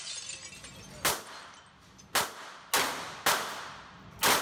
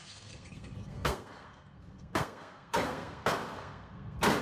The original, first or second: first